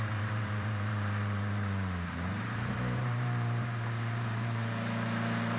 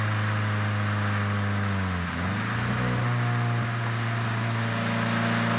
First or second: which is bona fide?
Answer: second